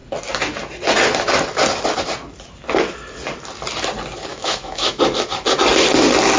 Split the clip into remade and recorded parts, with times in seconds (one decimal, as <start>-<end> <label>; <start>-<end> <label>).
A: 0.0-4.3 recorded; 4.3-5.0 remade; 5.0-6.4 recorded